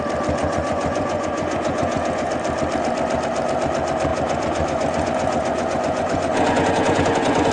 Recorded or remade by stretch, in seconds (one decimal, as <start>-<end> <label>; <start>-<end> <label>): 0.0-0.4 recorded; 0.4-2.3 remade; 2.3-4.1 recorded; 4.1-7.5 remade